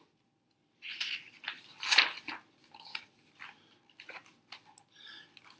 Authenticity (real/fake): real